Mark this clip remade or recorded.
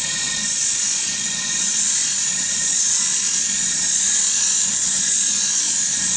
remade